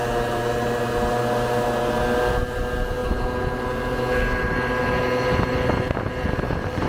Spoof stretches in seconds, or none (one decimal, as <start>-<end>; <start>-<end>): none